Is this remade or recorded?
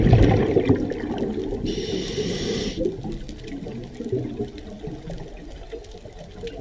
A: recorded